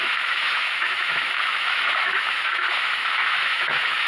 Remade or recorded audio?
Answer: remade